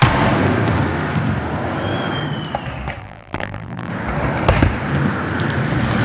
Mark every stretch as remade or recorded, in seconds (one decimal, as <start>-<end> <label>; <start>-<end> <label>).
0.0-3.0 recorded; 3.0-3.9 remade; 3.9-6.0 recorded